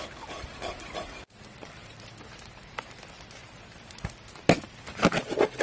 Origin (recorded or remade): recorded